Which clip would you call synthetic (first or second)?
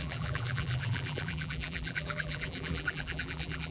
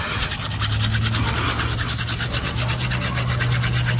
first